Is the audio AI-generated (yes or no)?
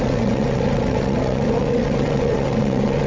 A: yes